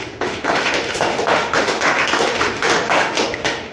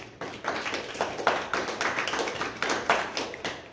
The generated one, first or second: first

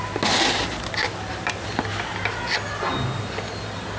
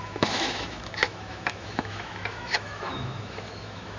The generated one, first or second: second